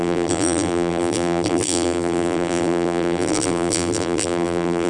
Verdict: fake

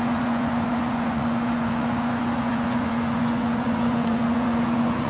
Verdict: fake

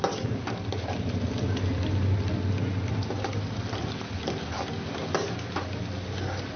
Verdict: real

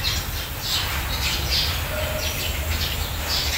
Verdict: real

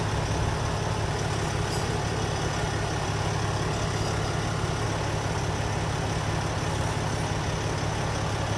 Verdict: real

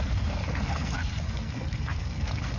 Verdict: fake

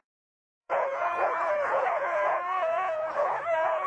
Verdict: fake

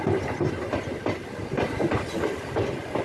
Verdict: real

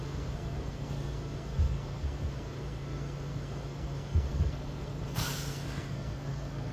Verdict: fake